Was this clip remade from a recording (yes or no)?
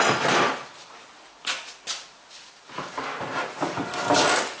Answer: no